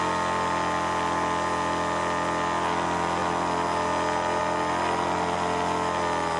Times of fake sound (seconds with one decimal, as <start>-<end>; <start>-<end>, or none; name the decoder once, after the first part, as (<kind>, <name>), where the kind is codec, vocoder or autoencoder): none